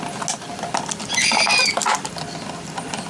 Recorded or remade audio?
recorded